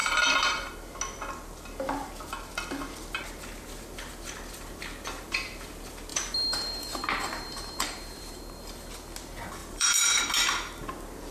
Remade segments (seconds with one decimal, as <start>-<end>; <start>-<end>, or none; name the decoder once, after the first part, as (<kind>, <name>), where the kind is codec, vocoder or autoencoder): 0.0-0.7 (vocoder, BigVGAN v2); 6.1-8.4; 9.6-10.2